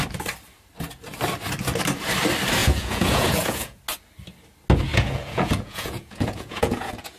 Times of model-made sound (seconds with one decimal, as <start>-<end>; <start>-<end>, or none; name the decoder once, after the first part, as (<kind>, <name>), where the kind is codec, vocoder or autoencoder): 2.6-3.8 (vocoder, Vocos); 4.9-7.2